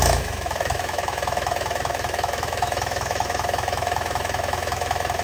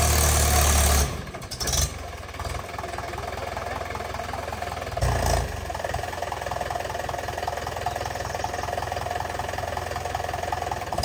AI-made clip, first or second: first